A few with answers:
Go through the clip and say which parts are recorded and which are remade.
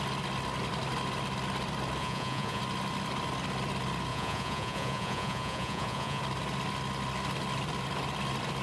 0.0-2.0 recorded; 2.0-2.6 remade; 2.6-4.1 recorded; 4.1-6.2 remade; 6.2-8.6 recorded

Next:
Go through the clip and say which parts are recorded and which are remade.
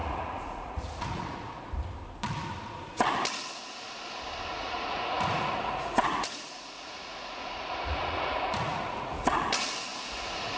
0.0-1.6 remade; 1.6-4.5 recorded; 4.5-9.5 remade; 9.5-9.9 recorded; 9.9-10.6 remade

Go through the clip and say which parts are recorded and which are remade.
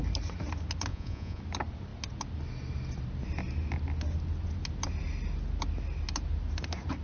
0.0-0.9 recorded; 0.9-1.4 remade; 1.4-7.0 recorded